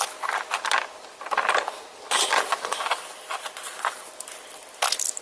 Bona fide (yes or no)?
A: yes